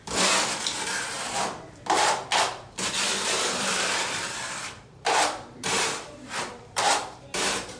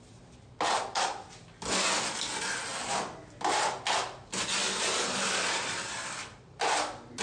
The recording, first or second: second